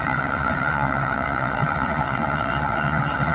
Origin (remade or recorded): remade